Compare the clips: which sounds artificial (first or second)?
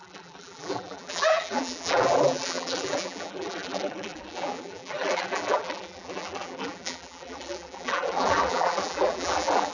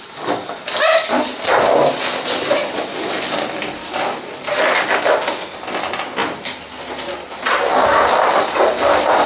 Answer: first